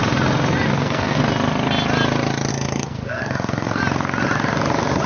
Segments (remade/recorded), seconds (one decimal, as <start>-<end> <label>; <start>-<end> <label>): 0.0-0.7 recorded; 0.7-1.2 remade; 1.2-2.5 recorded; 2.5-3.8 remade; 3.8-5.1 recorded